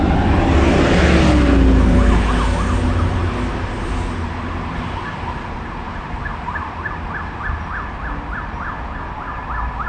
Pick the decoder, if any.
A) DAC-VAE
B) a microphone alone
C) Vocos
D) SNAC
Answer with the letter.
B